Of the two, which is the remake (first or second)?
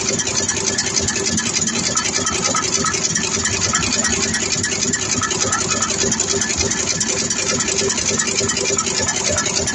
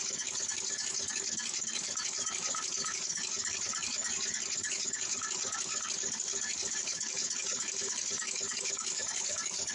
second